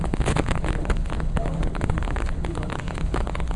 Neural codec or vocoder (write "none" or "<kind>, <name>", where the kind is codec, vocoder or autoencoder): codec, HILCodec